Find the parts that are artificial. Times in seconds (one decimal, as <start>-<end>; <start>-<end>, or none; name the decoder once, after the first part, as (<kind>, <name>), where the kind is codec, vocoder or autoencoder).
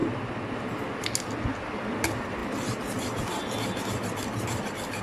none